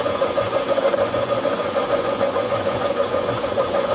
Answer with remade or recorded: remade